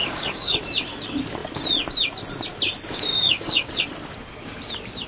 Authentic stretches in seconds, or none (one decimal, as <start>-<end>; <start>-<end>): 0.6-3.1; 3.7-5.1